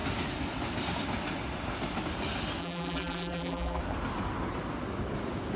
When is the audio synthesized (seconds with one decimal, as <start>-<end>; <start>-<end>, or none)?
2.6-3.8